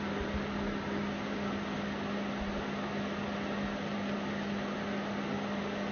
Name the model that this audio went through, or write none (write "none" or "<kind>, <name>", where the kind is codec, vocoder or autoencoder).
none